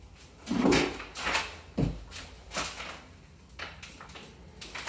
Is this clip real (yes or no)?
yes